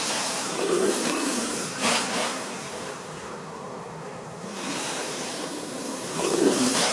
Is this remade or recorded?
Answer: remade